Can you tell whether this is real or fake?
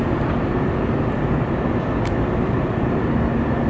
real